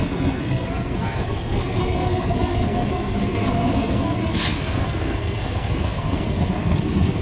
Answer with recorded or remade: remade